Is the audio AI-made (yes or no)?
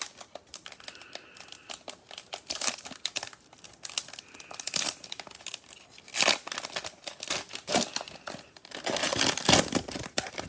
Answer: no